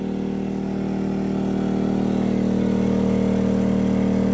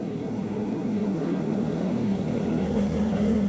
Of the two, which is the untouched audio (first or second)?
first